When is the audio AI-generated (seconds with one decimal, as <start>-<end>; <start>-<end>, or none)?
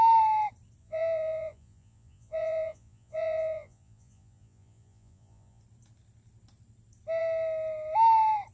0.8-5.6